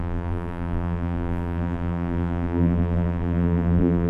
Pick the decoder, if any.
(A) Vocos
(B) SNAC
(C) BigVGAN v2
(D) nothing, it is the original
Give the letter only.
C